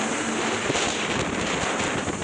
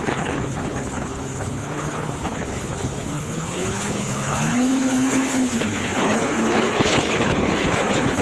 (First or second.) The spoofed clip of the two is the second